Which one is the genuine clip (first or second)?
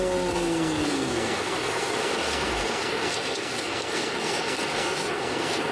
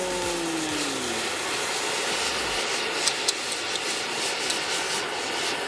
second